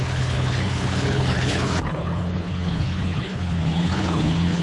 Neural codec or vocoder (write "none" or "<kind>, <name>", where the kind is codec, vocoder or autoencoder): codec, HILCodec